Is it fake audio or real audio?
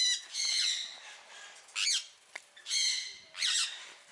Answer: real